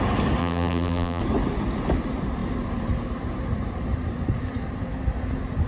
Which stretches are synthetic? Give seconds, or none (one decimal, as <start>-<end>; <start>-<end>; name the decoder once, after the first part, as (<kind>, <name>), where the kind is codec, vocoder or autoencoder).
0.4-1.2 (vocoder, BigVGAN v2)